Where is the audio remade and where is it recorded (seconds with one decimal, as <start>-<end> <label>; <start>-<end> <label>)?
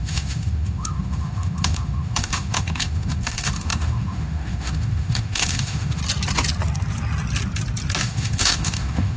0.0-6.0 remade; 6.0-8.0 recorded; 8.0-9.2 remade